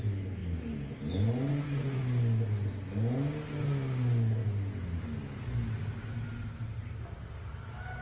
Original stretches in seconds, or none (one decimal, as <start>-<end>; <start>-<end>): 0.0-1.5; 2.0-8.0